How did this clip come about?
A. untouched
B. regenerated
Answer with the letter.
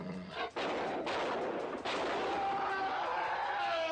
A